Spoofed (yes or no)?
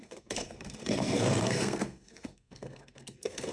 yes